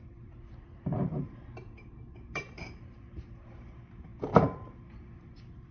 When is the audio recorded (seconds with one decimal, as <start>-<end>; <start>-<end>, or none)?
none